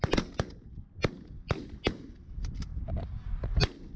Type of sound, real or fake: real